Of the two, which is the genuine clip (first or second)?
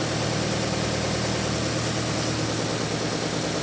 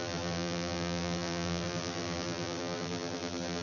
first